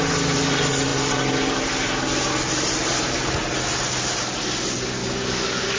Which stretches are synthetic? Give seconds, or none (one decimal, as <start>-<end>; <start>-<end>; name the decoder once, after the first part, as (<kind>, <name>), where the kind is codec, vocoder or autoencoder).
5.0-5.8 (codec, DAC)